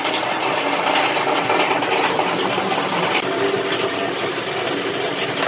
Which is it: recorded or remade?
recorded